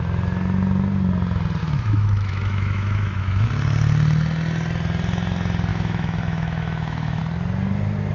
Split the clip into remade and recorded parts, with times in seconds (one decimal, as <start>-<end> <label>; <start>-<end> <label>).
0.0-1.6 recorded; 1.6-3.5 remade; 3.5-5.7 recorded; 5.7-7.2 remade; 7.2-8.1 recorded